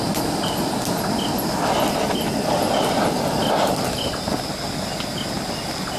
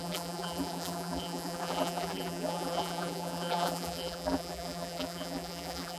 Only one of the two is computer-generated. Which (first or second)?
second